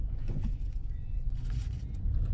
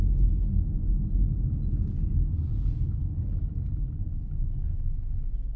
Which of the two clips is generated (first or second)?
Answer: first